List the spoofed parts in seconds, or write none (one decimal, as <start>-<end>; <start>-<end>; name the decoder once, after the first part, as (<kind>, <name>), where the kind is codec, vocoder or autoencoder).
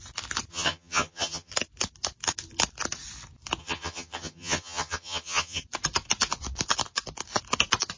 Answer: 0.5-1.5 (vocoder, HiFi-GAN); 3.6-5.6